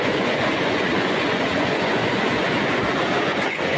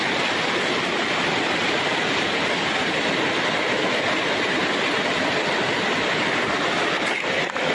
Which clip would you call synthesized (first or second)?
first